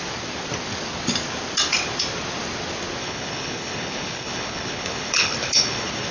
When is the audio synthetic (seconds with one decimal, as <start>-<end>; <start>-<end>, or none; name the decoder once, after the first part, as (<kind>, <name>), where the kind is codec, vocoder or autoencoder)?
3.0-6.1 (codec, HILCodec)